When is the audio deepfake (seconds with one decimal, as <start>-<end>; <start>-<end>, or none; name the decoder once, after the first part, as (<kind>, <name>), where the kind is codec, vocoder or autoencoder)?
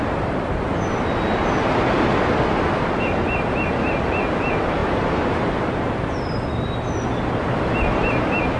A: none